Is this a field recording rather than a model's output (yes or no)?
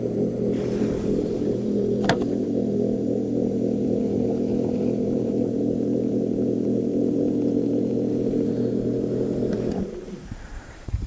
no